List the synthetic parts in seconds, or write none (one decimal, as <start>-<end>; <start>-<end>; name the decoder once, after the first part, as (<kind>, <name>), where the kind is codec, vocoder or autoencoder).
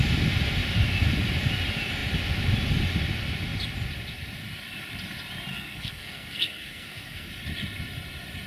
5.5-7.3 (codec, SNAC)